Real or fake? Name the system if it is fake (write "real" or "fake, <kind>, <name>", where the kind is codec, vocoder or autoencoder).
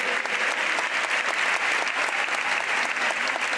real